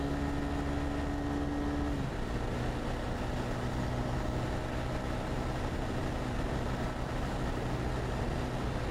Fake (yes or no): no